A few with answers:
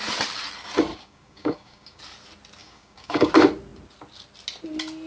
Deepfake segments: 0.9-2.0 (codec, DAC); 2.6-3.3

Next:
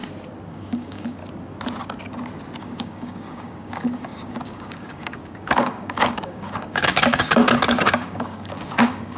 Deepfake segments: 0.5-1.2 (codec, DAC); 2.6-9.2

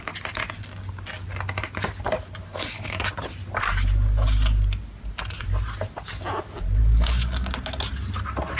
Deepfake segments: 2.5-3.0 (codec, DAC); 6.8-7.5

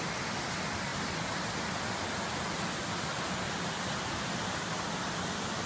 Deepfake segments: none

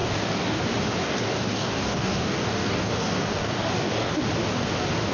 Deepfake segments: 0.0-0.6 (codec, DAC); 1.0-4.1

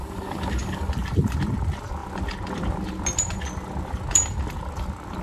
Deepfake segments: 0.0-0.9 (codec, DAC)

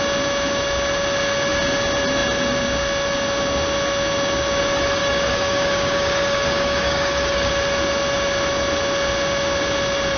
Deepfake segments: 5.0-7.5 (codec, DAC)